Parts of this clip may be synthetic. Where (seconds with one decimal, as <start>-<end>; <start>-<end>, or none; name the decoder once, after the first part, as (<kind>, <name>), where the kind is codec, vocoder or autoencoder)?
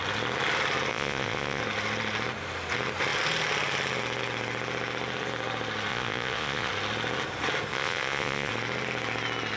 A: 0.9-1.6 (vocoder, Vocos); 5.9-6.7; 7.7-8.5